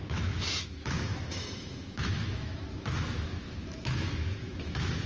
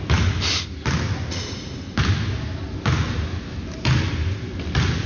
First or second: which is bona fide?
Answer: second